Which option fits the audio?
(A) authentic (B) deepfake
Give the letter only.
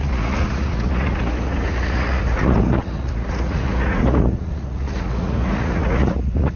B